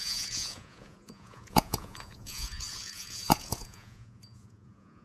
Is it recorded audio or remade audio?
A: remade